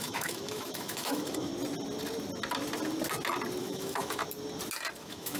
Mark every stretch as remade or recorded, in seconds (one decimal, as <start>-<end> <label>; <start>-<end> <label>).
0.0-1.5 remade; 1.5-3.6 recorded; 3.6-4.2 remade; 4.2-5.0 recorded; 5.0-5.4 remade